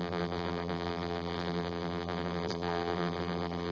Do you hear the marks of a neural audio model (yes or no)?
yes